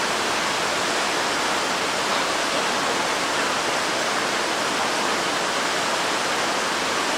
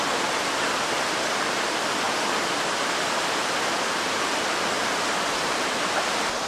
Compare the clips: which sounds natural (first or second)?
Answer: first